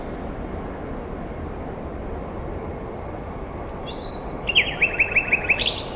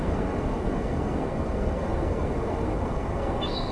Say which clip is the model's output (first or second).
second